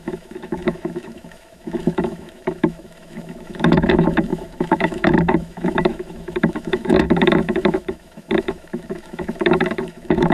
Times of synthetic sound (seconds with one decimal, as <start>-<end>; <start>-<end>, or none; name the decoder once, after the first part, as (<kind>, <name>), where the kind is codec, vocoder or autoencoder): 0.0-10.3 (autoencoder, DAC-VAE)